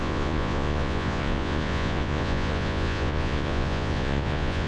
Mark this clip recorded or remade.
remade